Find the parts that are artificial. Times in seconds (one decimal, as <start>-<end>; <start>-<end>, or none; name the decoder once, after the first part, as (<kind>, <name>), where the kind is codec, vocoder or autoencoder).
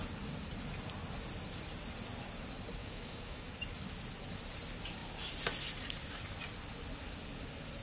2.8-3.5 (autoencoder, DAC-VAE)